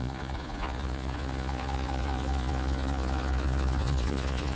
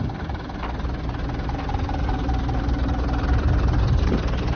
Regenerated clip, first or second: first